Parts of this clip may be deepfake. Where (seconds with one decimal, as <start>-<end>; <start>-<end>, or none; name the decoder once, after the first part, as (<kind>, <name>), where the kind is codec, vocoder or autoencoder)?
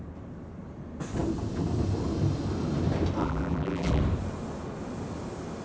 3.2-4.0 (vocoder, BigVGAN v2)